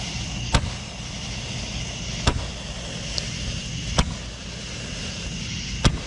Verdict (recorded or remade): recorded